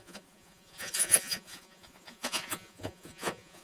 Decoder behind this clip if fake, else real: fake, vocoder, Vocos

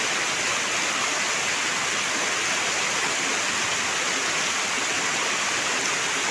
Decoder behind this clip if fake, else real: real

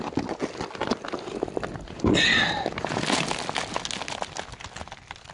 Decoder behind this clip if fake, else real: real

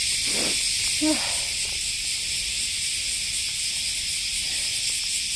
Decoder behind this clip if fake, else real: real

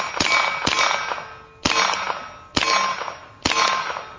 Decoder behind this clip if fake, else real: real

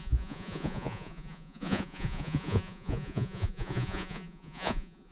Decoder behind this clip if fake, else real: fake, vocoder, Vocos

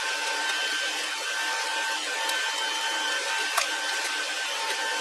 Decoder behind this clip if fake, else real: real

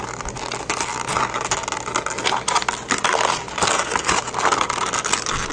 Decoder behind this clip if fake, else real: real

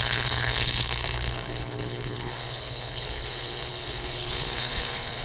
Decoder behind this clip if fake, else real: fake, codec, HILCodec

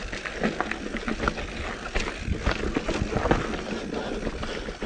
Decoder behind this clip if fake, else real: real